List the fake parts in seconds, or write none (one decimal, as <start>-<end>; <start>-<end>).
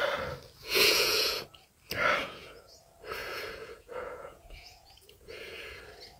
0.6-1.4; 2.2-2.8; 3.2-5.8